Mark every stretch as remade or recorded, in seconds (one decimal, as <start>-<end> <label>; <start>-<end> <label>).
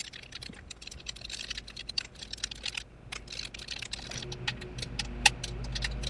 0.0-2.4 remade; 2.4-6.1 recorded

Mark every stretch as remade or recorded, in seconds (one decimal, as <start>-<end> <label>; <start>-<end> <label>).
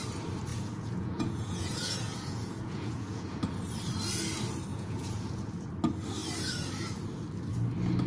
0.0-0.5 recorded; 0.5-3.4 remade; 3.4-4.7 recorded; 4.7-5.7 remade; 5.7-8.1 recorded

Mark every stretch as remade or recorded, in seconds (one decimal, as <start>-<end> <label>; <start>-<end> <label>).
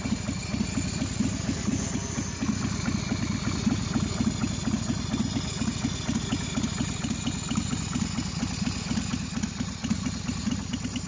0.0-11.1 recorded